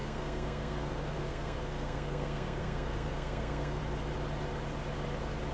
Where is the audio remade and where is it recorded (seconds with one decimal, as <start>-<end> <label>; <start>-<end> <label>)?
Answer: 0.0-3.8 remade; 3.8-5.5 recorded